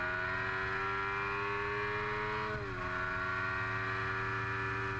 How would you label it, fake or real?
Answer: real